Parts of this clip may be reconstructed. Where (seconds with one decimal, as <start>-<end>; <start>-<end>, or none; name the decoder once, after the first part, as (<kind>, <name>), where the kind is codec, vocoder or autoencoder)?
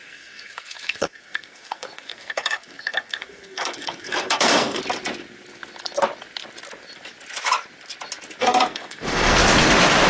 0.0-4.8 (codec, SNAC); 8.4-9.4